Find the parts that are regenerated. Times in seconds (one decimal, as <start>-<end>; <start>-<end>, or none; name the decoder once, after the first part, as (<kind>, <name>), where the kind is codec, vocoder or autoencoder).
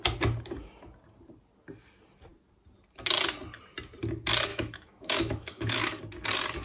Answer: 4.5-6.0 (autoencoder, DAC-VAE)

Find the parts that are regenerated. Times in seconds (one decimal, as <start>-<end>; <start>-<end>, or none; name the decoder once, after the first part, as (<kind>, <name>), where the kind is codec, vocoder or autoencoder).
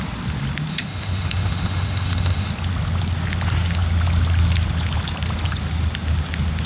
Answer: 0.7-2.5 (autoencoder, DAC-VAE)